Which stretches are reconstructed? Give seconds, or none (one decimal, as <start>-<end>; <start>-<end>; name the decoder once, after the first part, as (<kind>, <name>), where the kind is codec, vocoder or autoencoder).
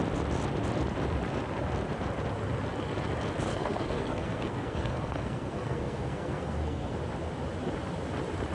3.5-7.0 (codec, SNAC)